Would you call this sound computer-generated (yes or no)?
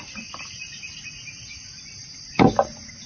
no